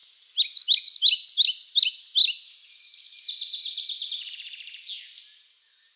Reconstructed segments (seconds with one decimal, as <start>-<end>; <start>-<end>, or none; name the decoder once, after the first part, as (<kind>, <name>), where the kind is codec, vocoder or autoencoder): none